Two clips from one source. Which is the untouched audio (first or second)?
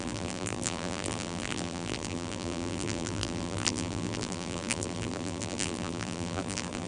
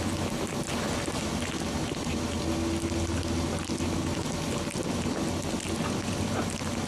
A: second